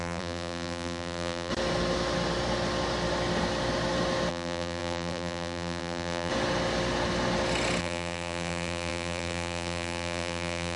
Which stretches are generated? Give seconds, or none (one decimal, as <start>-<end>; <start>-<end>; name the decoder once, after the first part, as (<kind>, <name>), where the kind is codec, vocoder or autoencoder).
0.0-1.5 (vocoder, BigVGAN v2); 4.3-6.3; 7.8-10.8